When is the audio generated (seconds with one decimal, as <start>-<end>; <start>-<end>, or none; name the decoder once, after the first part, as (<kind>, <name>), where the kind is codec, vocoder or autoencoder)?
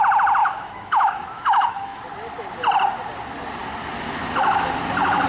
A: 0.4-2.0 (autoencoder, DAC-VAE)